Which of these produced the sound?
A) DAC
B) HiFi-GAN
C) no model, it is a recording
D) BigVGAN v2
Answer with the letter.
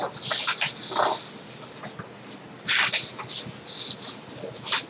C